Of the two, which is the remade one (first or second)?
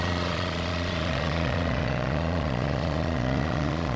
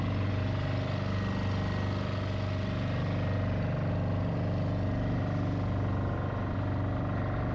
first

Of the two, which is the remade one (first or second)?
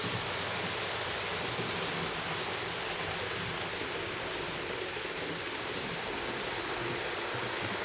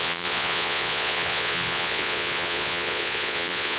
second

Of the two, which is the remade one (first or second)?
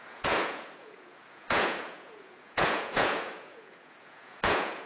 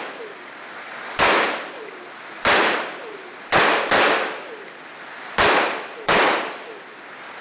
first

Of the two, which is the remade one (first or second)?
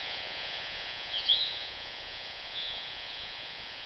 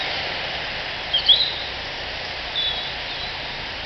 first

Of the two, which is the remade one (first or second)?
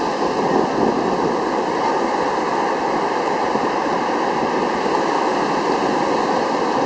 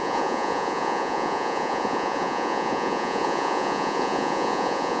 second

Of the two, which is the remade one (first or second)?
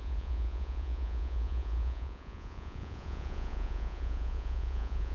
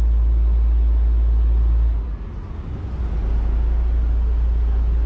first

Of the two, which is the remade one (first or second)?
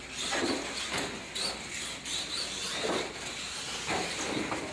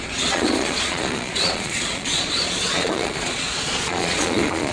second